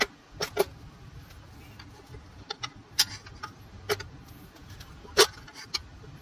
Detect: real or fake real